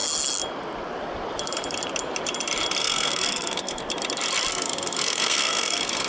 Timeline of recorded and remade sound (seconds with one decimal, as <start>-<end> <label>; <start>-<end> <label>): 0.0-2.8 recorded; 2.8-3.8 remade; 3.8-4.5 recorded; 4.5-6.1 remade

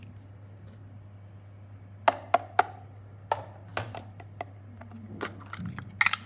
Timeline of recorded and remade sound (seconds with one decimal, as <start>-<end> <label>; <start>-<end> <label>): 0.0-6.3 recorded

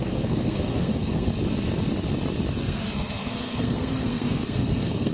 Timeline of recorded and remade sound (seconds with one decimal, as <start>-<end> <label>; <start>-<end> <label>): 0.0-1.3 remade; 1.3-2.5 recorded; 2.5-5.1 remade

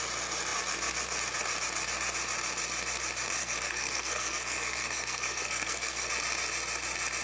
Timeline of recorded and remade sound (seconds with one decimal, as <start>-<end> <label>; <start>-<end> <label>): 0.0-3.4 recorded; 3.4-6.1 remade; 6.1-7.2 recorded